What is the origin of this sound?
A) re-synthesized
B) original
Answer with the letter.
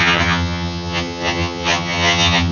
A